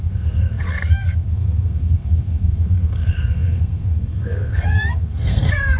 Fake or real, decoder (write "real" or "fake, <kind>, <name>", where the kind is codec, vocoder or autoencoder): fake, codec, SNAC